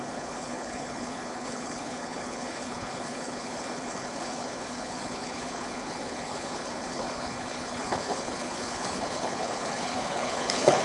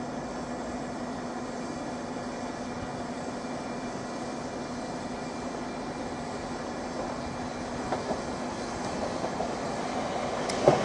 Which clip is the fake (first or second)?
first